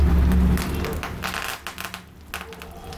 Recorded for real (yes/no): yes